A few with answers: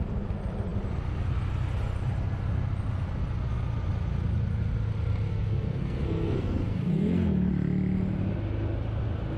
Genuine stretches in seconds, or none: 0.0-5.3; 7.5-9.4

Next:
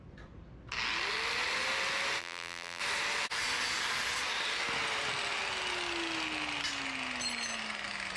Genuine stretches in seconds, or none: 0.0-2.2; 2.8-8.2

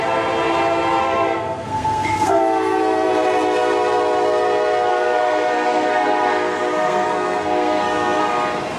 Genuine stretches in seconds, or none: 0.0-1.0; 3.1-4.9; 8.3-8.8

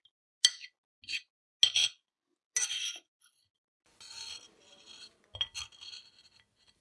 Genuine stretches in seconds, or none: 0.0-6.8